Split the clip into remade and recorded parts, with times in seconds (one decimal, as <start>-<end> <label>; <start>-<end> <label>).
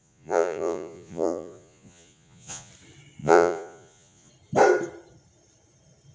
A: 0.0-2.7 remade; 2.7-3.2 recorded; 3.2-4.3 remade; 4.3-6.1 recorded